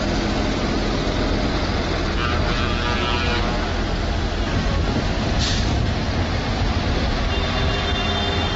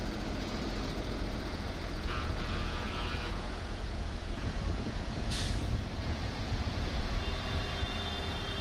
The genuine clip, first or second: first